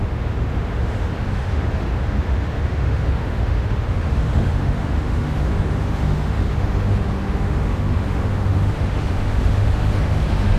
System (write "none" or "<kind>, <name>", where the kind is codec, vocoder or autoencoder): autoencoder, DAC-VAE